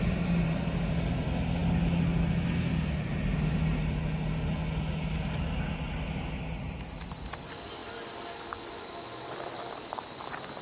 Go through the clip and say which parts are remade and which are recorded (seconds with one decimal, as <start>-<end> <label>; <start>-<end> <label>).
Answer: 0.0-10.6 recorded